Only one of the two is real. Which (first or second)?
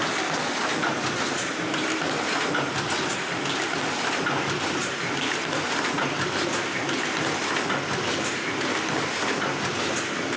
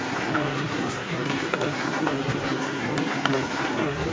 first